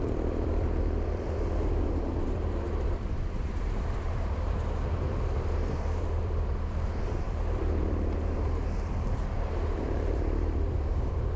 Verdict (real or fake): fake